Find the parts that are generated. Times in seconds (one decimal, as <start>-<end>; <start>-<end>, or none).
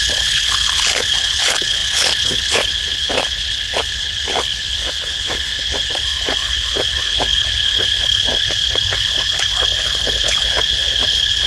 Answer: 0.0-11.5